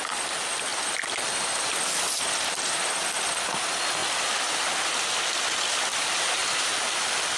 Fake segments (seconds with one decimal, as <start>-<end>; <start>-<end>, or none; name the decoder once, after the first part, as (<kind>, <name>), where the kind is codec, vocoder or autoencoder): 5.9-6.7 (vocoder, BigVGAN v2)